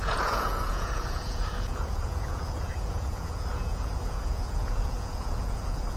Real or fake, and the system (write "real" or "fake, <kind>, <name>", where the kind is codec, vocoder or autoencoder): fake, vocoder, Vocos